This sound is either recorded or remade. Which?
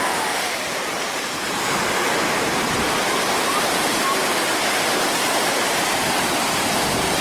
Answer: recorded